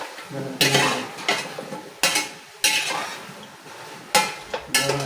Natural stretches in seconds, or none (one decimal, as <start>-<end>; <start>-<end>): 0.0-5.1